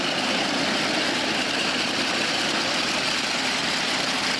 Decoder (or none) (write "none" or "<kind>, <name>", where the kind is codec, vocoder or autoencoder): vocoder, BigVGAN v2